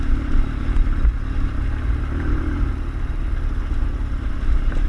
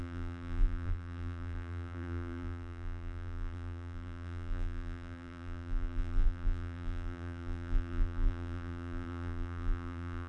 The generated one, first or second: second